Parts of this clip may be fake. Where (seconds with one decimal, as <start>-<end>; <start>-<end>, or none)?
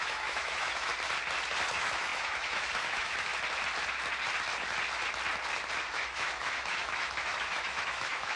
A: 0.0-0.9; 1.7-3.3; 5.9-8.4